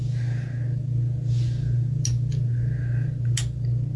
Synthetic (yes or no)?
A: no